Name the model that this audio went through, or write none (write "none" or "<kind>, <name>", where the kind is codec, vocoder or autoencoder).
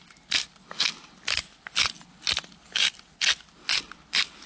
none